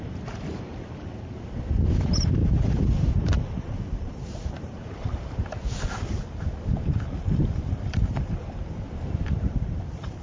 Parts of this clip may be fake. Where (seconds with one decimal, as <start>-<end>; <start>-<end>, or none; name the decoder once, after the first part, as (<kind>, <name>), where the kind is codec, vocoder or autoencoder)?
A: 0.0-5.6 (vocoder, BigVGAN v2); 6.1-10.2